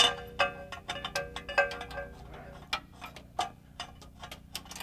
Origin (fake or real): real